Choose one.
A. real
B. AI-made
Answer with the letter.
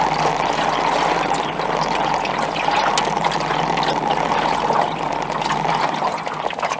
A